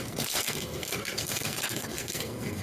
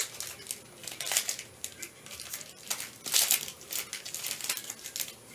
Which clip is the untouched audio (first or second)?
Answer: second